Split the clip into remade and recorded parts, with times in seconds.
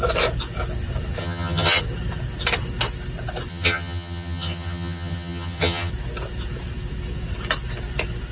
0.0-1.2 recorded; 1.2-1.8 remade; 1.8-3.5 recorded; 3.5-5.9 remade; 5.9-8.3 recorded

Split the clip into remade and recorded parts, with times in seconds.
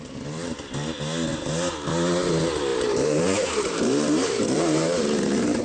0.0-1.3 recorded; 1.3-1.9 remade; 1.9-2.7 recorded; 2.7-5.6 remade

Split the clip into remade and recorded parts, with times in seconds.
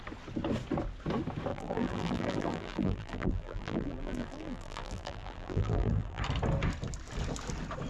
0.0-1.5 recorded; 1.5-6.2 remade; 6.2-7.9 recorded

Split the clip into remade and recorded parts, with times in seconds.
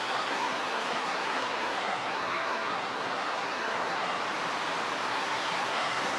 0.0-4.2 remade; 4.2-5.1 recorded; 5.1-6.2 remade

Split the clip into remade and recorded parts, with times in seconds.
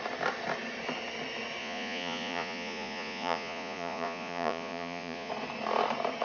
0.0-1.6 recorded; 1.6-5.3 remade; 5.3-6.2 recorded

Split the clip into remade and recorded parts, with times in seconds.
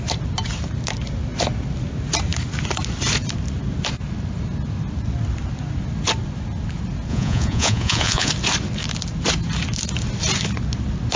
0.0-7.1 recorded; 7.1-8.3 remade; 8.3-11.2 recorded